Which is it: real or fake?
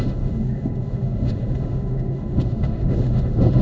fake